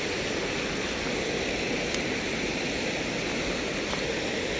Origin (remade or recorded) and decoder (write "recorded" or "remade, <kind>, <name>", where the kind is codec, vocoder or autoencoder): recorded